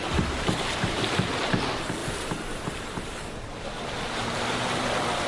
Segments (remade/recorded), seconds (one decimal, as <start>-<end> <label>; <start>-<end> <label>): 0.0-2.0 remade; 2.0-2.7 recorded; 2.7-5.3 remade